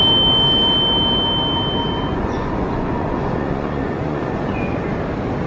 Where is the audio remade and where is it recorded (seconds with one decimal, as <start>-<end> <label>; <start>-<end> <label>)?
0.0-2.1 recorded; 2.1-4.9 remade; 4.9-5.5 recorded